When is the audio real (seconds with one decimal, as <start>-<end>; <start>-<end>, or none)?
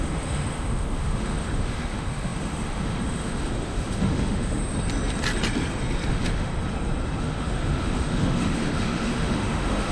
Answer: 4.6-6.1; 6.5-7.2